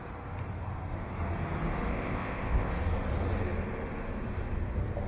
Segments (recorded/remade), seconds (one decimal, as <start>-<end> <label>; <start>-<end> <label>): 0.0-1.9 recorded; 1.9-2.7 remade; 2.7-5.1 recorded

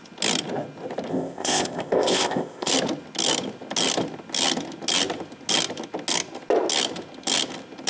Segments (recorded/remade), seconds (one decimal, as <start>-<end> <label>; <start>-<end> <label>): 0.0-1.1 recorded; 1.1-2.7 remade; 2.7-7.9 recorded

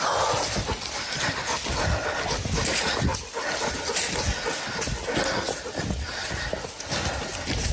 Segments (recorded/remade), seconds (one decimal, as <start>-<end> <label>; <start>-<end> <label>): 0.0-7.7 recorded

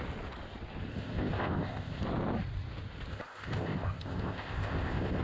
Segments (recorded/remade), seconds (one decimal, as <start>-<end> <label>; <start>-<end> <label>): 0.0-0.9 recorded; 0.9-2.0 remade; 2.0-3.1 recorded; 3.1-5.2 remade